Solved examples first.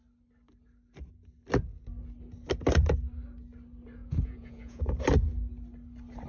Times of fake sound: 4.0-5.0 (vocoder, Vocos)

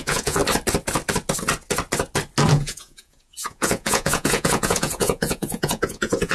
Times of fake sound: 0.0-0.4 (vocoder, Vocos); 2.5-6.3

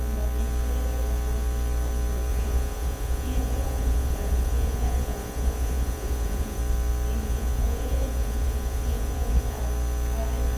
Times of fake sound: 2.3-6.6 (vocoder, Vocos); 7.2-9.6

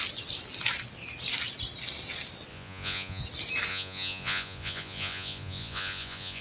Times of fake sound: 2.5-3.2 (vocoder, Vocos); 3.7-6.4

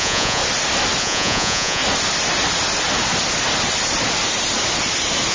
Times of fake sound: 0.0-0.4 (vocoder, Vocos); 1.0-1.8